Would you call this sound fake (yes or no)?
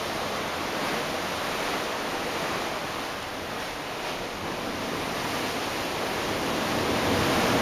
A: yes